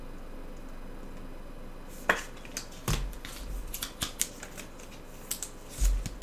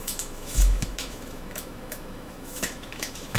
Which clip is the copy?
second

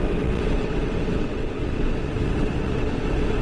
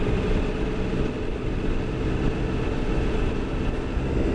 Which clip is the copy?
first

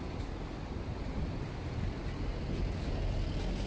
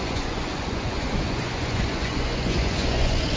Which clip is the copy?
second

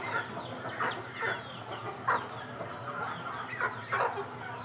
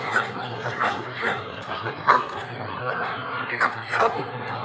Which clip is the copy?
second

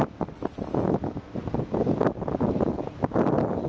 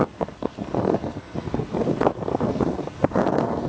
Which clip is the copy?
second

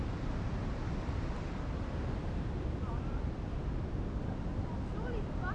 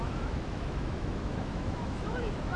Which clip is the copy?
second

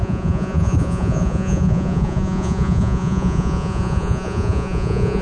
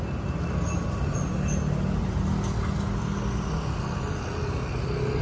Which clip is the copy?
first